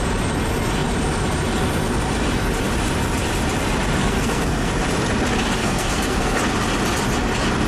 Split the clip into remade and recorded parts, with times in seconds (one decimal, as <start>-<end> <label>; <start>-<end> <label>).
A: 0.0-4.0 recorded; 4.0-4.7 remade; 4.7-5.6 recorded; 5.6-6.4 remade; 6.4-7.7 recorded